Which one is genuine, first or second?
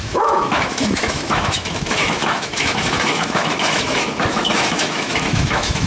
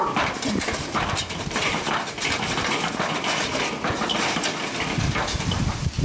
second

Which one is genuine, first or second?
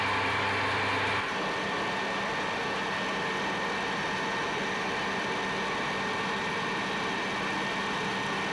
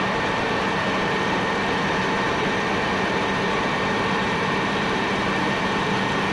first